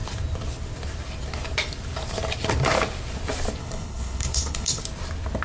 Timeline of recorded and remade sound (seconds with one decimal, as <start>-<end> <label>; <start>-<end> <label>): 0.0-3.6 recorded; 3.6-4.8 remade; 4.8-5.4 recorded